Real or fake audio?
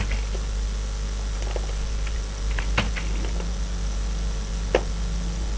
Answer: real